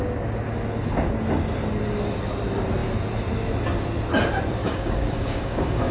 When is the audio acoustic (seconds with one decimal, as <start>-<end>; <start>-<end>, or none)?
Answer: 0.0-4.6